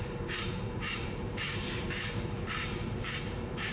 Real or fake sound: fake